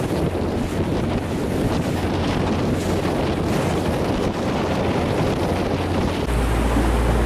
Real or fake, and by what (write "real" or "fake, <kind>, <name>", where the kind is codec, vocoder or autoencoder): real